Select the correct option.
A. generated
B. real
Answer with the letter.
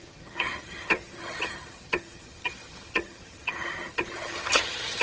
A